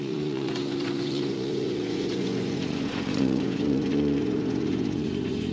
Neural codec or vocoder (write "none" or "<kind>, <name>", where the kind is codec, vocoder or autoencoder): vocoder, Vocos